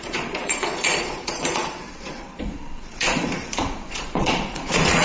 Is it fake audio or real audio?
fake